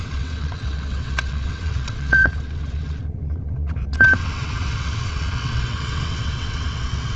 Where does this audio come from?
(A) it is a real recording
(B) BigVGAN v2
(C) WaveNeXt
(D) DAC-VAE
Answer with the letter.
C